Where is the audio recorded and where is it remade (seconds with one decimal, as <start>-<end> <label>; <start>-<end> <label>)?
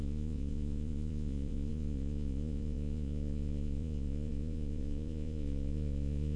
0.0-6.4 remade